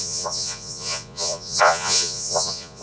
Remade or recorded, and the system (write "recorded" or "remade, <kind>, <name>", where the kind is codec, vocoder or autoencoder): remade, vocoder, Vocos